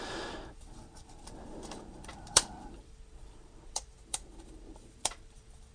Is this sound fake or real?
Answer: fake